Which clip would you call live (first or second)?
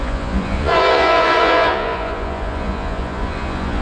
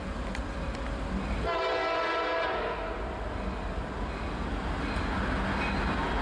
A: second